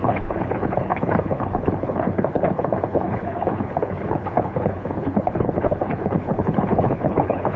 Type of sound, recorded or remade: remade